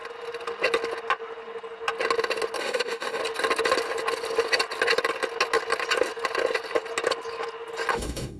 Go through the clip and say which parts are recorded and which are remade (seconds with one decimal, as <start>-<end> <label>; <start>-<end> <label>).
0.0-2.6 recorded; 2.6-3.2 remade; 3.2-7.9 recorded; 7.9-8.4 remade